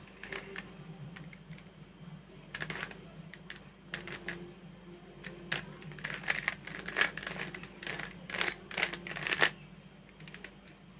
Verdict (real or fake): real